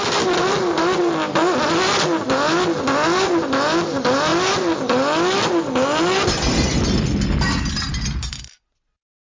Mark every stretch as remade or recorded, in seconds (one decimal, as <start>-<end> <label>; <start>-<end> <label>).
0.0-9.3 recorded